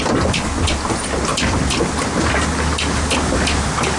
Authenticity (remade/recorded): recorded